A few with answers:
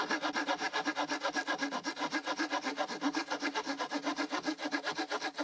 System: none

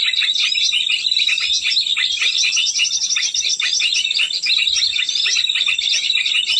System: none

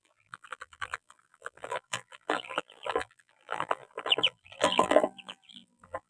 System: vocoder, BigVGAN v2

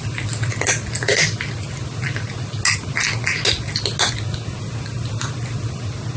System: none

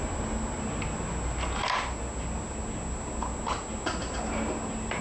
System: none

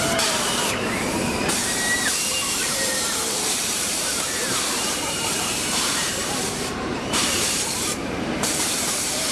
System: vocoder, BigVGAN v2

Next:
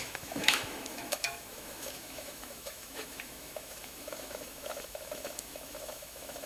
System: autoencoder, DAC-VAE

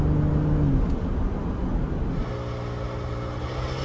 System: none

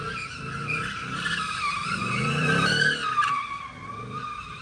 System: vocoder, BigVGAN v2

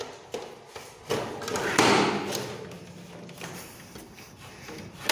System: none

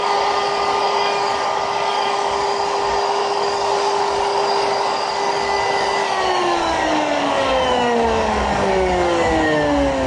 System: codec, DAC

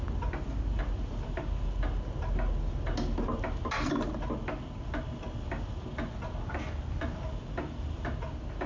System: none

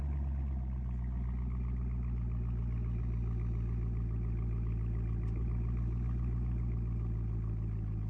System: none